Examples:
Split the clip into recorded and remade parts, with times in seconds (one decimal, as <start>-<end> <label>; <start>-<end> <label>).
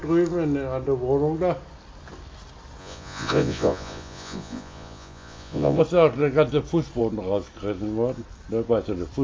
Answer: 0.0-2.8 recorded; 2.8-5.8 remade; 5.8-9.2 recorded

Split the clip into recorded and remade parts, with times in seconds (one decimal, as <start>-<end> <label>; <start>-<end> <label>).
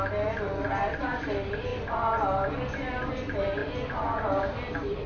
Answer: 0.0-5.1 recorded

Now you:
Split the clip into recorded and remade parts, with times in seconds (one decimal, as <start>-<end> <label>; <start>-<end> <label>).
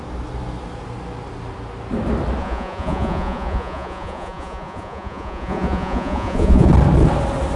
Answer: 0.0-2.4 recorded; 2.4-6.7 remade; 6.7-7.6 recorded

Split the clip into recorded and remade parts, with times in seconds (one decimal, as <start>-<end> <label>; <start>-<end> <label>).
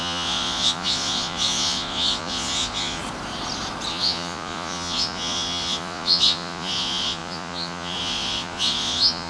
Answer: 0.0-3.0 remade; 3.0-3.9 recorded; 3.9-9.3 remade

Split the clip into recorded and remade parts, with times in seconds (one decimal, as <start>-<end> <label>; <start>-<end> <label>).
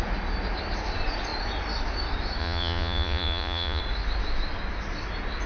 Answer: 0.0-2.4 recorded; 2.4-3.8 remade; 3.8-5.5 recorded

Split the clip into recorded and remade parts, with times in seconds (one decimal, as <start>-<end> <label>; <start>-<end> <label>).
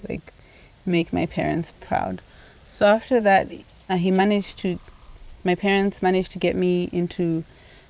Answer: 0.0-1.7 remade; 1.7-2.7 recorded; 2.7-4.2 remade; 4.2-7.9 recorded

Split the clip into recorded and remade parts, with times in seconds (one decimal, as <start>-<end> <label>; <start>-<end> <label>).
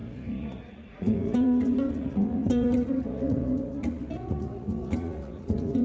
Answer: 0.0-5.8 remade